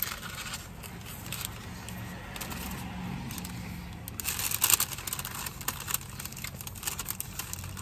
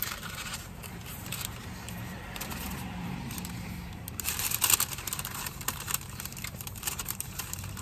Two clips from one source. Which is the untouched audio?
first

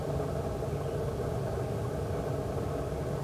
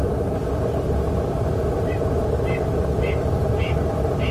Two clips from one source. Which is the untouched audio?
first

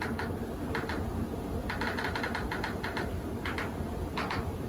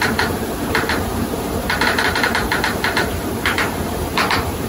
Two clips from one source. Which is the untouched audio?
first